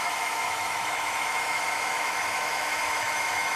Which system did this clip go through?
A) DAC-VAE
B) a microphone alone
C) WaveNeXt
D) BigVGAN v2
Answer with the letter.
A